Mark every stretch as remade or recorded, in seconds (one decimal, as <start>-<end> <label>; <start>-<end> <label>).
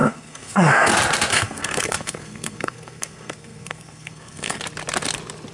0.0-0.9 remade; 0.9-1.3 recorded; 1.3-4.6 remade; 4.6-5.5 recorded